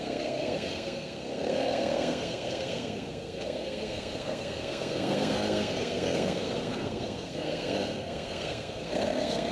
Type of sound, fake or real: fake